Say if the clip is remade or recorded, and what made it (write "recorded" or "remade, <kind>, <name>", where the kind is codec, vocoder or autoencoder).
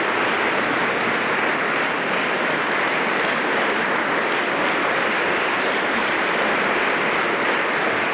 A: remade, vocoder, BigVGAN v2